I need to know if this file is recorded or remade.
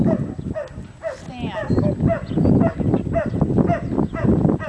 recorded